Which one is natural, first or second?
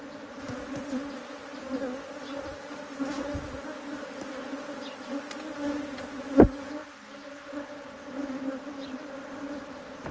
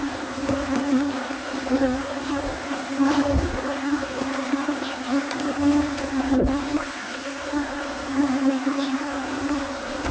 first